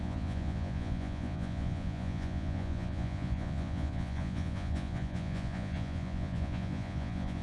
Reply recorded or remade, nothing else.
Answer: remade